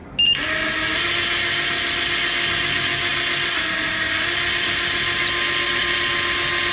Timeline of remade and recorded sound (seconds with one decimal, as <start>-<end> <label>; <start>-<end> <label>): 0.0-6.7 recorded